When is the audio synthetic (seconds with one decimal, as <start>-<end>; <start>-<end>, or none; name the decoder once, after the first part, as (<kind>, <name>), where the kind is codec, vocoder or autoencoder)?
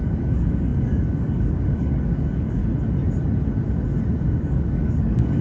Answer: 0.0-2.6 (codec, DAC); 4.4-5.4